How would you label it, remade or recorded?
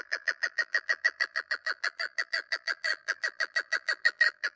remade